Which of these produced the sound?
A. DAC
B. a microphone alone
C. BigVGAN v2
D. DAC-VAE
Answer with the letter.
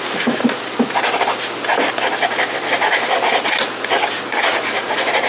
B